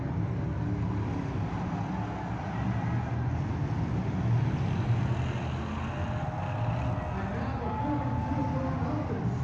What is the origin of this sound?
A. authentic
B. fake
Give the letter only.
A